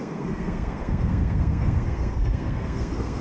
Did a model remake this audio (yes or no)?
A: yes